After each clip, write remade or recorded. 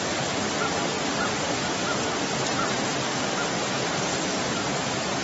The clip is recorded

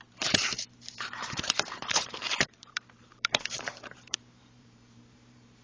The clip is remade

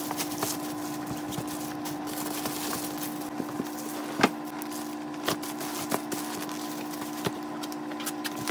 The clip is recorded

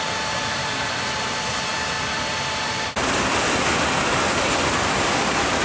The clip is remade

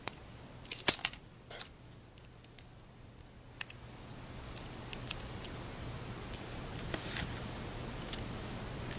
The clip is recorded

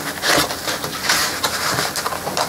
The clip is recorded